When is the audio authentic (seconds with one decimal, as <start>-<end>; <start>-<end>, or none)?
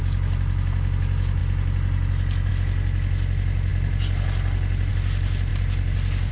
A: 0.0-6.3